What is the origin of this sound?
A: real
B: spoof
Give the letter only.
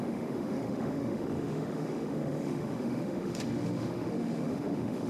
B